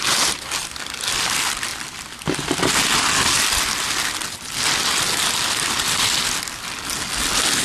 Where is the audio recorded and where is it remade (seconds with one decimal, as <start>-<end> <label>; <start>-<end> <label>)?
0.0-7.6 recorded